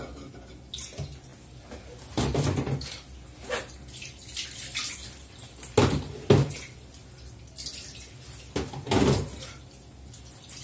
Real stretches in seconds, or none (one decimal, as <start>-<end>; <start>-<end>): 0.0-10.6